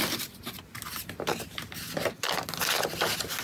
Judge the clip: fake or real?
real